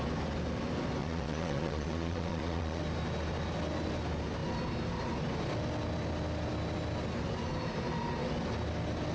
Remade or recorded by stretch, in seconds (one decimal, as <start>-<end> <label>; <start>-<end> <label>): 0.0-1.0 recorded; 1.0-2.8 remade; 2.8-9.1 recorded